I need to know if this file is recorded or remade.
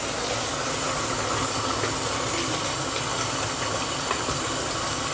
recorded